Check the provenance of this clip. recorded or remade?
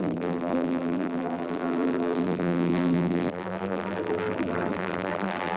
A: remade